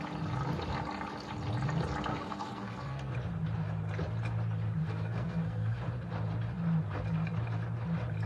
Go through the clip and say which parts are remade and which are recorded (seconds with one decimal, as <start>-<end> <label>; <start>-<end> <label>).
0.0-2.1 recorded; 2.1-3.1 remade; 3.1-4.8 recorded; 4.8-5.8 remade; 5.8-8.3 recorded